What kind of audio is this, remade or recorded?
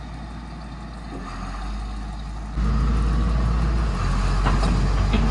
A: recorded